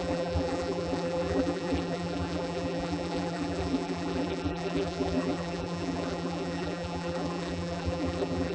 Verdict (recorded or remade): remade